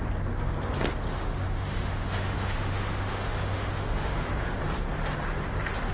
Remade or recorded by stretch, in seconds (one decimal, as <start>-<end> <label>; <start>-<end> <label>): 0.0-1.1 recorded; 1.1-4.6 remade; 4.6-5.9 recorded